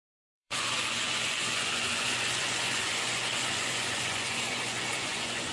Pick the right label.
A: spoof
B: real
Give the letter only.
A